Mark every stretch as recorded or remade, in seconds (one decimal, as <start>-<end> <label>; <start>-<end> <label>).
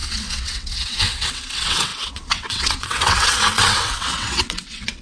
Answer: 0.0-5.0 remade